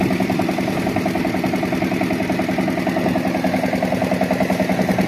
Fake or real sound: real